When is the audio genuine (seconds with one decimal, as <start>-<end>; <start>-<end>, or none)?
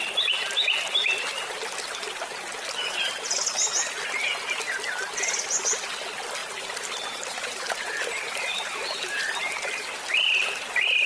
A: 0.0-6.4; 9.3-11.1